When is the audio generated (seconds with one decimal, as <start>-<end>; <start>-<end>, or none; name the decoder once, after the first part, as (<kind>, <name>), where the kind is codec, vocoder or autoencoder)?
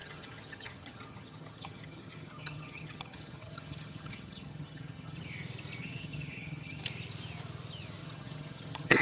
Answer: 0.0-5.2 (vocoder, HiFi-GAN); 5.8-6.8; 8.0-9.0